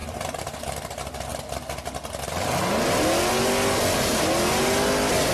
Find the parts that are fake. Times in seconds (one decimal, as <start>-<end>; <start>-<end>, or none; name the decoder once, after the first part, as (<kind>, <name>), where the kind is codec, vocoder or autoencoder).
none